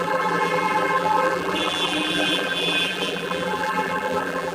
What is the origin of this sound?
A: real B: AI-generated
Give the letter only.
B